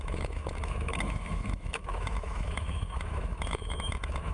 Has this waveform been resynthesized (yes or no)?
yes